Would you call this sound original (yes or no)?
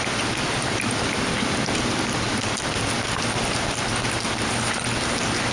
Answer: yes